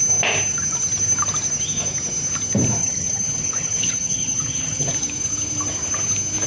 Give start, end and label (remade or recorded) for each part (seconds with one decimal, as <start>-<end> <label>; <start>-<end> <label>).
0.0-2.8 recorded; 2.8-4.9 remade; 4.9-6.5 recorded